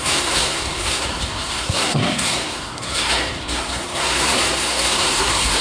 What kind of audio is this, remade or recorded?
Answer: remade